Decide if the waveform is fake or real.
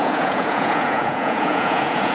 fake